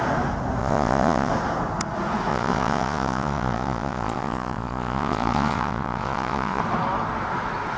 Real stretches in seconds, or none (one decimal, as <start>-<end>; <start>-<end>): 0.0-0.6; 1.3-2.3; 6.6-7.8